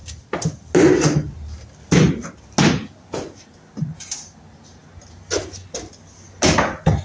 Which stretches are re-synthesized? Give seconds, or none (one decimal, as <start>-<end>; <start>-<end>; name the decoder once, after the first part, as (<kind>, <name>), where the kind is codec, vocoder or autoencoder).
none